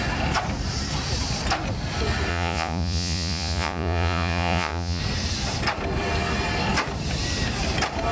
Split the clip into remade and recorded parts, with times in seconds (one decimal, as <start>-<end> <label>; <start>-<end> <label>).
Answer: 0.0-2.3 recorded; 2.3-5.0 remade; 5.0-8.1 recorded